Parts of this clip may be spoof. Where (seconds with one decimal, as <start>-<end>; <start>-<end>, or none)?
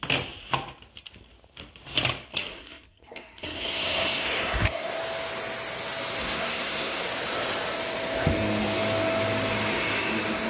2.5-5.0; 6.2-7.0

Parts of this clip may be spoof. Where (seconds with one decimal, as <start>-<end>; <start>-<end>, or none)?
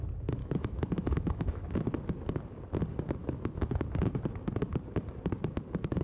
0.4-1.7; 3.2-3.7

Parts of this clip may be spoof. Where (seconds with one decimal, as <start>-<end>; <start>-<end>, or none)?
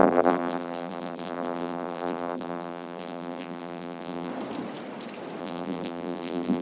0.0-4.3; 5.4-6.6